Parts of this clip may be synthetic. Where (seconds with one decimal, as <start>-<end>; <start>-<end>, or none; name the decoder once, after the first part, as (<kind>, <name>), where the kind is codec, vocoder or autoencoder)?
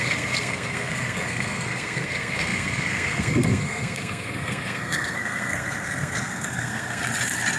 0.0-7.0 (codec, SNAC)